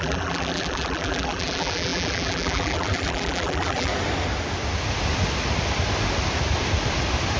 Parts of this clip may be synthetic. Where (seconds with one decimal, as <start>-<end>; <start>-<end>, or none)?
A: 0.0-3.9